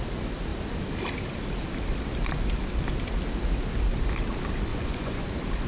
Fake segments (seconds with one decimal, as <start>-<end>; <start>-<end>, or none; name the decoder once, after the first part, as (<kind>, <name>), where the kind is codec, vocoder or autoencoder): 4.7-5.3 (vocoder, Vocos)